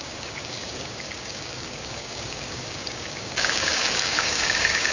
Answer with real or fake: fake